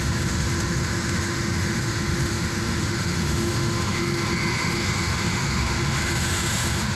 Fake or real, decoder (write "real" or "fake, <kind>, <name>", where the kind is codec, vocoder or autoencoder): fake, autoencoder, DAC-VAE